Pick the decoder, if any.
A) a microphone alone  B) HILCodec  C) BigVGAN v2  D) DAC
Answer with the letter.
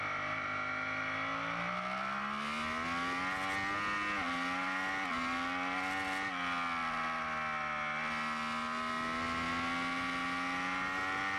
A